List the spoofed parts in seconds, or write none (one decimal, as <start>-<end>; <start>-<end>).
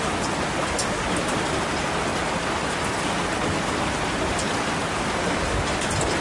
none